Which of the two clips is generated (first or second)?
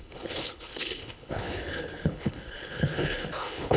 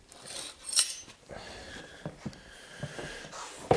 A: first